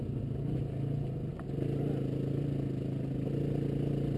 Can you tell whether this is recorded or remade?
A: recorded